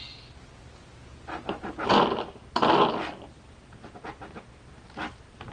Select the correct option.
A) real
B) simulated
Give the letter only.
A